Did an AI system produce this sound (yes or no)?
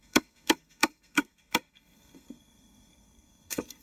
yes